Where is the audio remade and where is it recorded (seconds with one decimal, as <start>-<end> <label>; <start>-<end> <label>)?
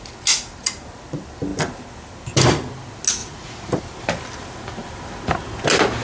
0.0-3.2 recorded; 3.2-3.8 remade; 3.8-6.0 recorded